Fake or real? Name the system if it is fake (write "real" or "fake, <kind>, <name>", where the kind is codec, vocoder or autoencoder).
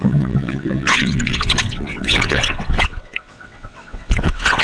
fake, vocoder, WaveNeXt